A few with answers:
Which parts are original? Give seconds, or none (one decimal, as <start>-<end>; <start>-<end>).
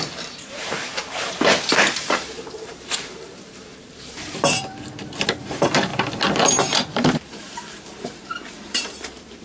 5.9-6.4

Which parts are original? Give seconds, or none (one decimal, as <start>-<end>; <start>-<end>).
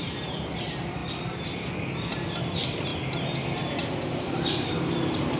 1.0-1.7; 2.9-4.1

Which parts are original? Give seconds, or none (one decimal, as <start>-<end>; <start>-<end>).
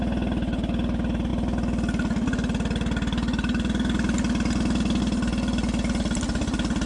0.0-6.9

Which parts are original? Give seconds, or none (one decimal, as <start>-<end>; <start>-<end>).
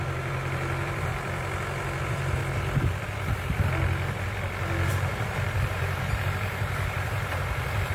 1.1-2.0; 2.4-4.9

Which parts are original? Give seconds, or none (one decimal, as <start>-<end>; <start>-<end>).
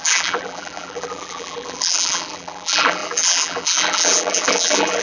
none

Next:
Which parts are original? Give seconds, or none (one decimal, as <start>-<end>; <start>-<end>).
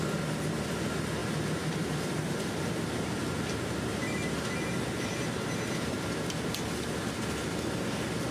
0.0-1.2; 4.3-8.3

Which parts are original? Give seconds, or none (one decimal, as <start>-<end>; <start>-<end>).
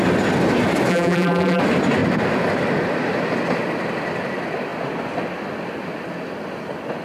0.0-0.9; 1.6-7.0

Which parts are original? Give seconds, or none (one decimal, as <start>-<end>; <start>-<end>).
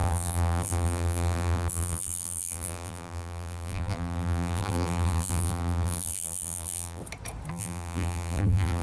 7.0-7.5